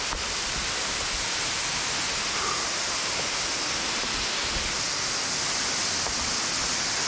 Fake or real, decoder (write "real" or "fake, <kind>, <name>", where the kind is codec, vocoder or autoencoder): real